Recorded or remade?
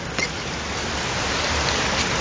recorded